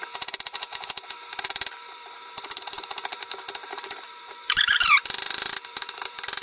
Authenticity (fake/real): fake